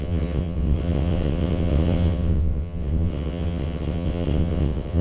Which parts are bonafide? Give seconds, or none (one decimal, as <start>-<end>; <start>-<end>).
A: none